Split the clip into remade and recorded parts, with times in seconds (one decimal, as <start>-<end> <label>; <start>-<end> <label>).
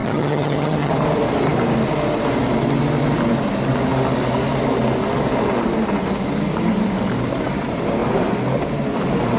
0.0-0.9 remade; 0.9-9.4 recorded